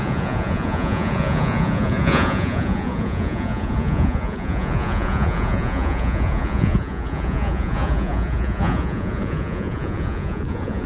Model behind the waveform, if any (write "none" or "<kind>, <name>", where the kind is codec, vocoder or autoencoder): vocoder, Vocos